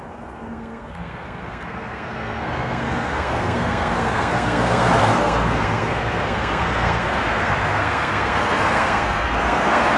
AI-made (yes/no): yes